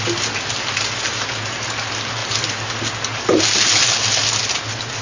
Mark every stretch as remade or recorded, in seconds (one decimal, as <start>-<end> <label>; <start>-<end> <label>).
0.0-5.0 recorded

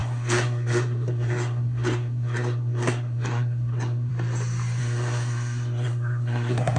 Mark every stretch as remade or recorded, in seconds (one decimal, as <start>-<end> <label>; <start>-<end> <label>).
0.0-4.1 remade; 4.1-4.8 recorded; 4.8-6.8 remade

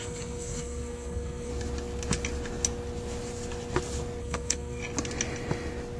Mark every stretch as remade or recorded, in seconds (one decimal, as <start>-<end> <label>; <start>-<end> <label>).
0.0-1.5 remade; 1.5-4.2 recorded; 4.2-4.8 remade; 4.8-6.0 recorded

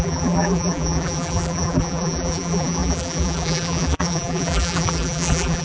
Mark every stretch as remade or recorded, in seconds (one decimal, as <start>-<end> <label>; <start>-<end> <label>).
0.0-5.6 remade

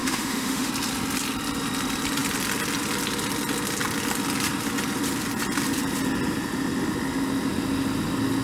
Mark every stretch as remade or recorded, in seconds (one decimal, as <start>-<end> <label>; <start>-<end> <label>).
0.0-0.7 remade; 0.7-8.4 recorded

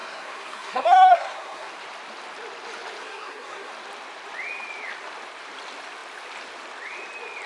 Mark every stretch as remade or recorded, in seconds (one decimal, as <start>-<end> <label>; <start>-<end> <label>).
0.0-1.7 remade; 1.7-3.0 recorded; 3.0-3.7 remade; 3.7-7.5 recorded